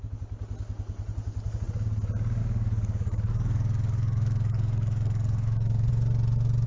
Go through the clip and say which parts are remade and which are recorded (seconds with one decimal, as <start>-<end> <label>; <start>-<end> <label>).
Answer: 0.0-2.4 recorded; 2.4-5.9 remade; 5.9-6.7 recorded